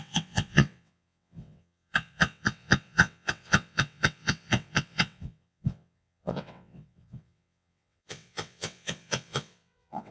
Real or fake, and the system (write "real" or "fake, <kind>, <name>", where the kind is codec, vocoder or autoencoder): fake, vocoder, WaveNeXt